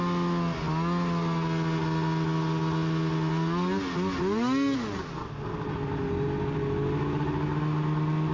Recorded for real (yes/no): yes